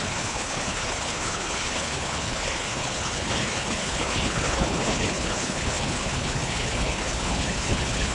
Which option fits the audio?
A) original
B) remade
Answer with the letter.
B